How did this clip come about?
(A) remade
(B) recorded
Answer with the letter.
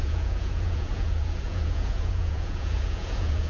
A